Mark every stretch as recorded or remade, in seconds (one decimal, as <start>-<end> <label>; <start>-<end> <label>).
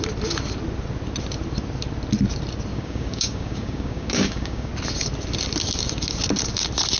0.0-2.7 recorded; 2.7-4.7 remade; 4.7-7.0 recorded